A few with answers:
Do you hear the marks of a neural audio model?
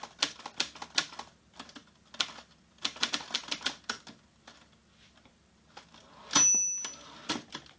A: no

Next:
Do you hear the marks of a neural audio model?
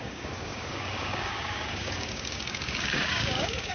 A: yes